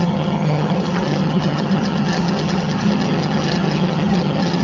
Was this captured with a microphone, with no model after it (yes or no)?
no